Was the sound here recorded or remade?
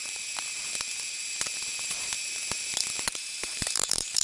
remade